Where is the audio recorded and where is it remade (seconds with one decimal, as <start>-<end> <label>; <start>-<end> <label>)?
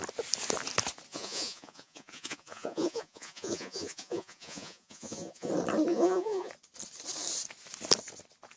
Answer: 0.0-1.1 recorded; 1.1-5.5 remade; 5.5-5.9 recorded; 5.9-6.5 remade; 6.5-8.6 recorded